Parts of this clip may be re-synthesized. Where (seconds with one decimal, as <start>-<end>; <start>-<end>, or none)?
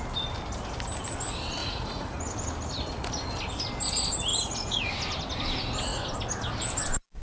1.6-2.2; 4.3-4.8